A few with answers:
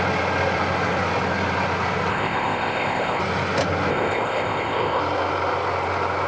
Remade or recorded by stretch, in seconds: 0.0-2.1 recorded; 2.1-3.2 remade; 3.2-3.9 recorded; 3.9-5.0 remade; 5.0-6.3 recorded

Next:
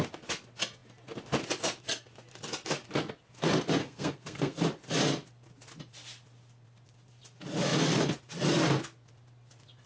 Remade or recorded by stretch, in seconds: 0.0-3.8 recorded; 3.8-4.6 remade; 4.6-9.9 recorded

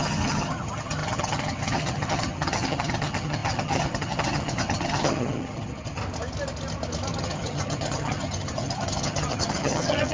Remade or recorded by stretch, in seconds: 0.0-6.0 remade; 6.0-7.2 recorded; 7.2-10.1 remade